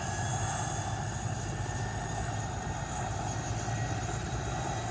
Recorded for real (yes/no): yes